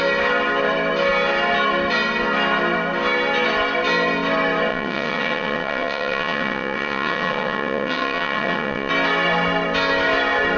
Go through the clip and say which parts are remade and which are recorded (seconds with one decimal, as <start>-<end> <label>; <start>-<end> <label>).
0.0-4.7 recorded; 4.7-8.9 remade; 8.9-10.6 recorded